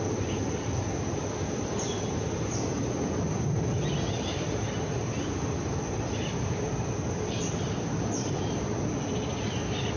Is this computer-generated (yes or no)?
no